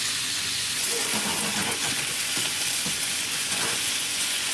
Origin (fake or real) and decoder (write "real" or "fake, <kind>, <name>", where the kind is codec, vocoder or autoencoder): fake, vocoder, Vocos